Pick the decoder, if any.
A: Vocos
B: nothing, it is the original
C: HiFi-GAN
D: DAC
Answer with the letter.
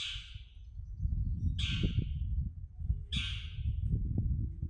B